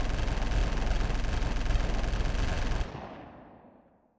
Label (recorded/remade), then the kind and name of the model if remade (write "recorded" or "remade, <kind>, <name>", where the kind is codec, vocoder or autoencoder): recorded